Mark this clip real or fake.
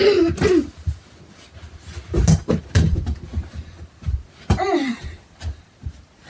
real